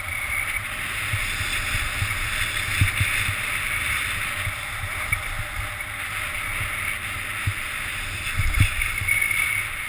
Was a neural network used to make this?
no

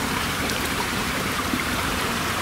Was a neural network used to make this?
yes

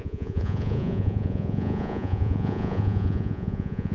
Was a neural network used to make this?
yes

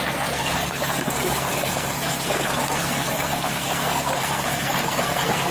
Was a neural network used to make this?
yes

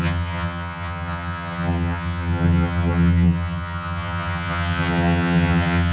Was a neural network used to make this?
yes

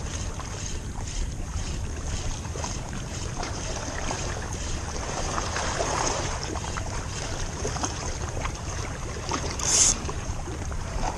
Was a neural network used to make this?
yes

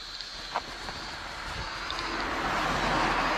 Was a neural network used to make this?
no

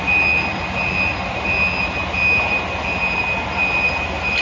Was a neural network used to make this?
no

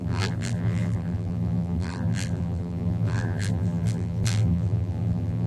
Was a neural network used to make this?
yes